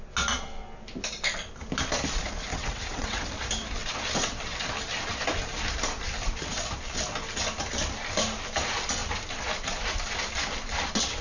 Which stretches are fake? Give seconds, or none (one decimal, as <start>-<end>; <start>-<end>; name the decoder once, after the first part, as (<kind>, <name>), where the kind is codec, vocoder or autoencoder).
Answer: 2.5-3.3 (vocoder, WaveNeXt)